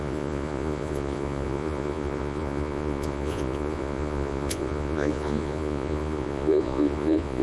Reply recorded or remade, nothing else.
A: remade